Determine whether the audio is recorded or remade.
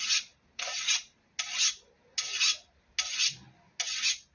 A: recorded